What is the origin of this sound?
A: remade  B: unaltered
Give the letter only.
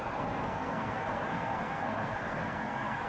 A